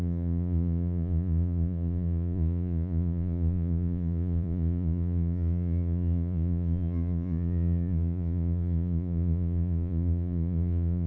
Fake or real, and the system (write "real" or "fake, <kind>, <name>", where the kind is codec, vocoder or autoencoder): fake, vocoder, Vocos